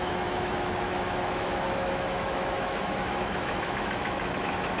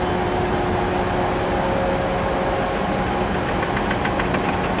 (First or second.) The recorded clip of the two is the second